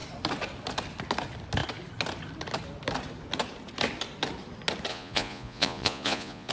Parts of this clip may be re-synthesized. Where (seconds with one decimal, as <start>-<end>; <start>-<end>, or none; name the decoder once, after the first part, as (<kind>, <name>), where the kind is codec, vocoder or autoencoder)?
4.9-6.5 (vocoder, Vocos)